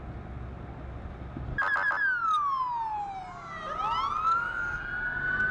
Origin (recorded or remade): recorded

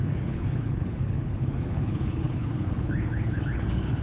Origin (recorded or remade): remade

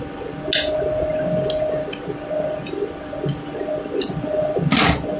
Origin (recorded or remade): recorded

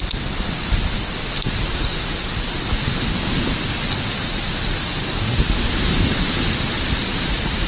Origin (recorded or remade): recorded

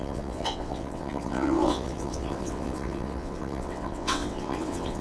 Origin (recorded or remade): remade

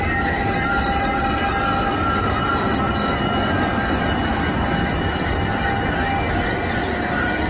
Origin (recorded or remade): recorded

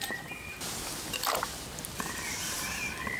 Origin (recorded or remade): recorded